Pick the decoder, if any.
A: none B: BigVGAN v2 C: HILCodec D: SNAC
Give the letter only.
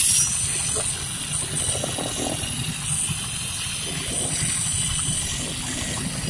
A